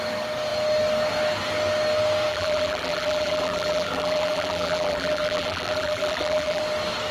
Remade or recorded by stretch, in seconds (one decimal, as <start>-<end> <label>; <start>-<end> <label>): 0.0-2.3 recorded; 2.3-6.6 remade; 6.6-7.1 recorded